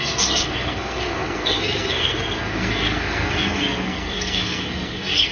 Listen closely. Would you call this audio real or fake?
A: fake